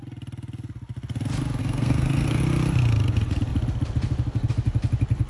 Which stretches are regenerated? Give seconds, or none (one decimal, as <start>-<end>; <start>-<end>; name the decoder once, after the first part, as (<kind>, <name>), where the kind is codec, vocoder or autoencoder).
1.6-2.4 (codec, SNAC)